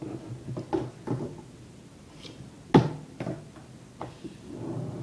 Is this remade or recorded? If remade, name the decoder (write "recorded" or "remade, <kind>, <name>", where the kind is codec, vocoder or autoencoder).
recorded